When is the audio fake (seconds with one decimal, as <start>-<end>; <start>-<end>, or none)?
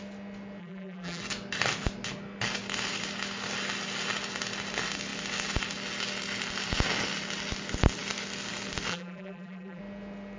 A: 0.6-1.2; 8.9-9.8